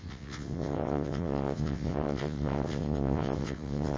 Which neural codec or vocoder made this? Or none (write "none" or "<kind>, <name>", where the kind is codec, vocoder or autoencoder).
vocoder, WaveNeXt